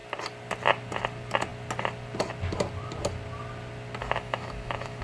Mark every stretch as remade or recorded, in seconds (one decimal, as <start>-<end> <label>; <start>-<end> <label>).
0.0-4.0 recorded; 4.0-5.0 remade